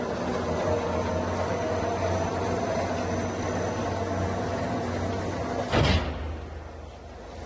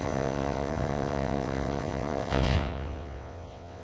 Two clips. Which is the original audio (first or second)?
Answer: first